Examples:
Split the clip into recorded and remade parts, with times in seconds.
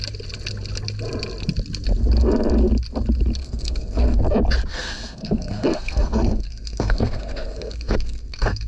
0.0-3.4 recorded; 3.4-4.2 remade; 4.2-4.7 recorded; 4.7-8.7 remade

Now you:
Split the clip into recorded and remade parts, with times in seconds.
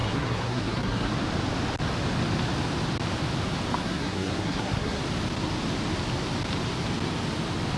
0.0-1.1 remade; 1.1-3.8 recorded; 3.8-5.0 remade; 5.0-7.8 recorded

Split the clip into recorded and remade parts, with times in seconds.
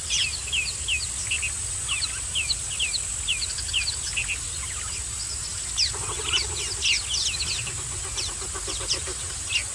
0.0-9.7 recorded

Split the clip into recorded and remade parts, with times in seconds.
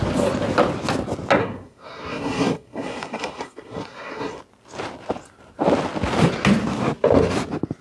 0.0-1.4 recorded; 1.4-4.4 remade; 4.4-7.8 recorded